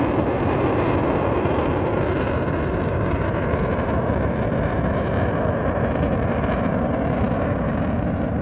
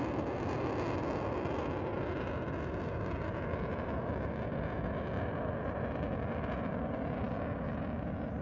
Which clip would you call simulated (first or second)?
first